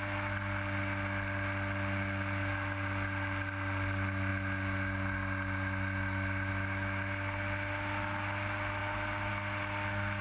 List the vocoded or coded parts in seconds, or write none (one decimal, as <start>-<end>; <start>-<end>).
none